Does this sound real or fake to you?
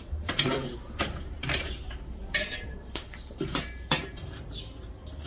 fake